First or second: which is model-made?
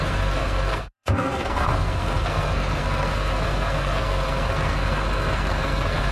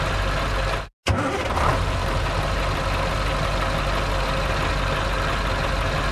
first